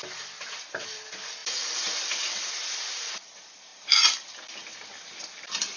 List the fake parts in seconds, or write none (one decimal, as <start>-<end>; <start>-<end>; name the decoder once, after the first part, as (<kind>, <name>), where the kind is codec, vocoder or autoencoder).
0.0-5.8 (vocoder, BigVGAN v2)